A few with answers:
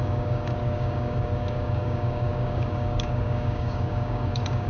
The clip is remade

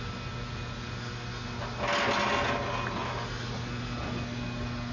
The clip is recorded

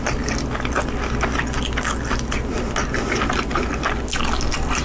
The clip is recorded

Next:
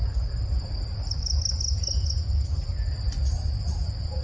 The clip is recorded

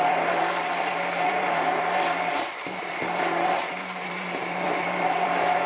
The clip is remade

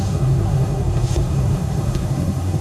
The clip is remade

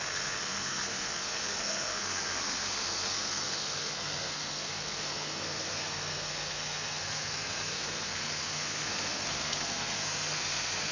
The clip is remade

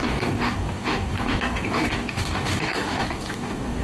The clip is remade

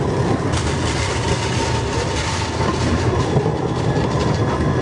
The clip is recorded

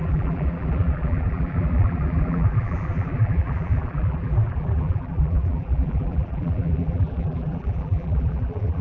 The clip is remade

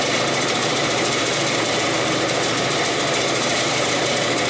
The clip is remade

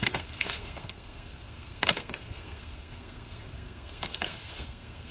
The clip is remade